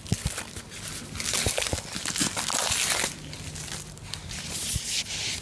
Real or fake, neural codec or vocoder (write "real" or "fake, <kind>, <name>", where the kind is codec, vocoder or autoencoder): real